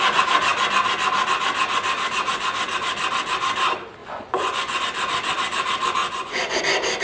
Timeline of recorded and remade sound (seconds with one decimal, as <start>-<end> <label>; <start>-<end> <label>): 0.0-4.0 recorded; 4.0-4.8 remade; 4.8-6.0 recorded; 6.0-6.6 remade; 6.6-7.0 recorded